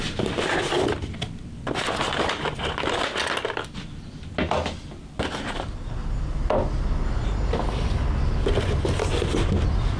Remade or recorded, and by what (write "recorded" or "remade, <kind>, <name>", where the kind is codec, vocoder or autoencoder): recorded